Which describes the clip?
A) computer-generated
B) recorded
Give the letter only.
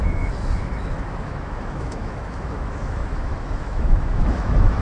A